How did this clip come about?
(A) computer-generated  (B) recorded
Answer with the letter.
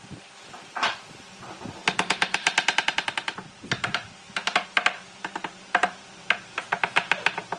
B